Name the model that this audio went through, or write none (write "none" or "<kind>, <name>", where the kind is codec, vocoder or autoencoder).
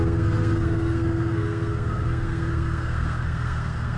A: codec, SNAC